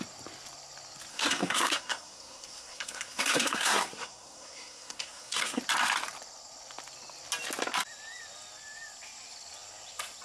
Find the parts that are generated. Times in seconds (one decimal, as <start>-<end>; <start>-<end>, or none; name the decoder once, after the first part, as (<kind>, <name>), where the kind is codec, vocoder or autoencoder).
1.1-5.6 (codec, SNAC)